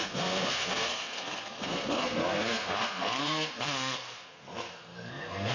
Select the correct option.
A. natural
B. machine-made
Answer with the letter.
B